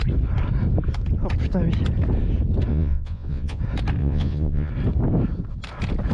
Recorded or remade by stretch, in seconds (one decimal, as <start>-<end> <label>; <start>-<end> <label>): 0.0-2.7 recorded; 2.7-3.6 remade; 3.6-4.0 recorded; 4.0-4.7 remade; 4.7-6.1 recorded